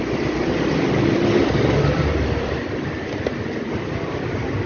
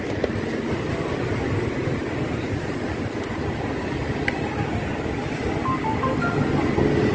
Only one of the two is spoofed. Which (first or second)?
first